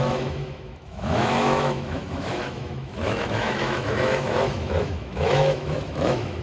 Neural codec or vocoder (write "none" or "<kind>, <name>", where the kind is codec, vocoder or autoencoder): autoencoder, DAC-VAE